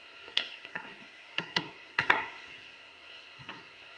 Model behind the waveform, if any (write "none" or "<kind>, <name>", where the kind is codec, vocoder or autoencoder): codec, SNAC